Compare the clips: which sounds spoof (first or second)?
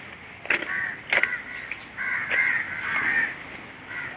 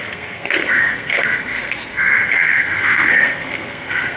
second